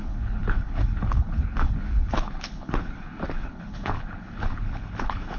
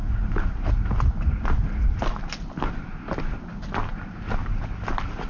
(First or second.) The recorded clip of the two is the second